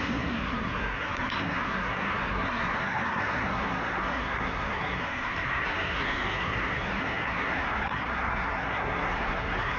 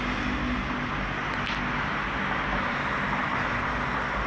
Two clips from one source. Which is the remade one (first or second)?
first